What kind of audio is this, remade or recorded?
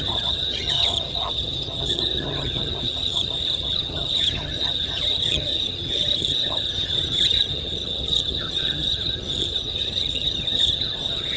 remade